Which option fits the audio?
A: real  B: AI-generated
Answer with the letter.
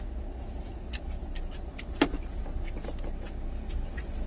A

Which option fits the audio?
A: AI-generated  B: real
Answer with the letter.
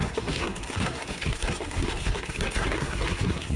A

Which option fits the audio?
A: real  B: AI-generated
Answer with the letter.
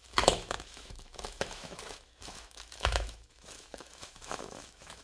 B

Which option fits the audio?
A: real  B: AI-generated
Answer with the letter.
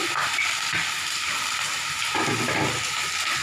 A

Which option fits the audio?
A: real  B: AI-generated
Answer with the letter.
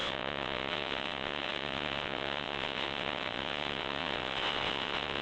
B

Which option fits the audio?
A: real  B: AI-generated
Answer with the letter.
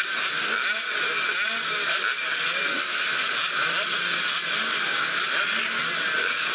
A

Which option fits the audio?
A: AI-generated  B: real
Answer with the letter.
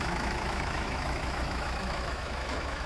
A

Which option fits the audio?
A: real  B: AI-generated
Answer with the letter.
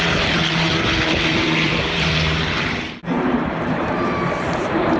B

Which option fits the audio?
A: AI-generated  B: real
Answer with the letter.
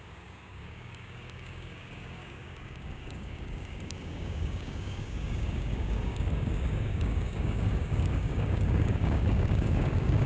A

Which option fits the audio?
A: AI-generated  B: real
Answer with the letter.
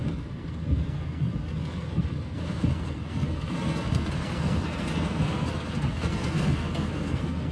A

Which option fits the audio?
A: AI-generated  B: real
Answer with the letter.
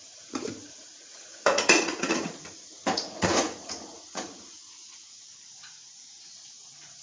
A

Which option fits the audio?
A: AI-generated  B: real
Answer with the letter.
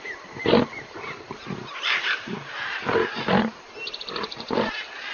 A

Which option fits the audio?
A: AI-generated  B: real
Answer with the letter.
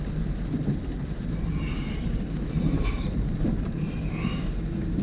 A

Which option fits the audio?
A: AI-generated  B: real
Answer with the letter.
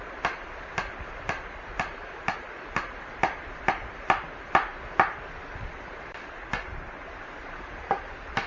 B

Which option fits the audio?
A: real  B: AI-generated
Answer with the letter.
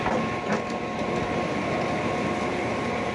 A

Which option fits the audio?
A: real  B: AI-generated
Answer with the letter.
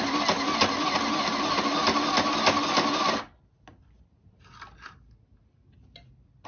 A